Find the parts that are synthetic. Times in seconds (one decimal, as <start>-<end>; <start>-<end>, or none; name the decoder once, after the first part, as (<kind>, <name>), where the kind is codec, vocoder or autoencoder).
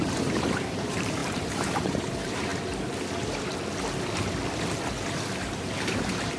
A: 0.0-2.5 (vocoder, BigVGAN v2); 5.4-6.4